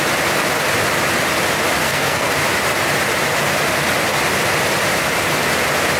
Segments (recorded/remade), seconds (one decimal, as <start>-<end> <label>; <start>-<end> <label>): 0.0-1.8 recorded; 1.8-2.3 remade; 2.3-6.0 recorded